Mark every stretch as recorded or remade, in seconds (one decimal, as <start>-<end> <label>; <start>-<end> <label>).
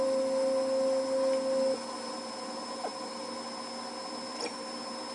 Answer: 0.0-5.1 recorded